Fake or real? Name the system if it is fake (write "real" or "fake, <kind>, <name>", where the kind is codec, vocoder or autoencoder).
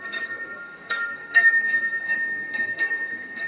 fake, codec, SNAC